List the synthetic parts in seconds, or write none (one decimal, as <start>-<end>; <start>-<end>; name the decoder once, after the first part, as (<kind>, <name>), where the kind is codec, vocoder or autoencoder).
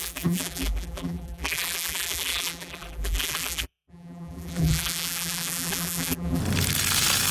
0.0-6.4 (vocoder, BigVGAN v2)